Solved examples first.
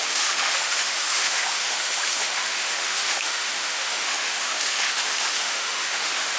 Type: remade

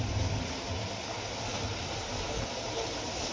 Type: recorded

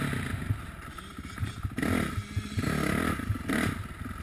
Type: recorded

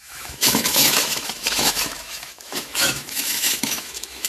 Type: remade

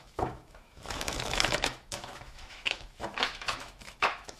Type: remade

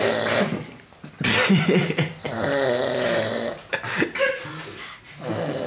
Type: recorded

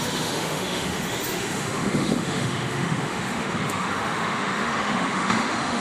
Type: remade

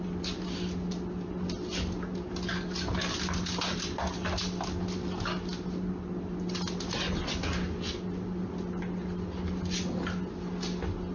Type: recorded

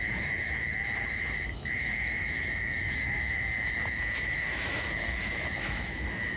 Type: remade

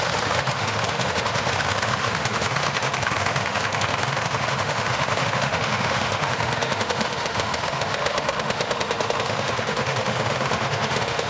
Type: remade